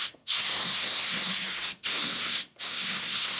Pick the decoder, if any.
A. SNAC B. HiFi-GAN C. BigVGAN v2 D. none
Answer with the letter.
A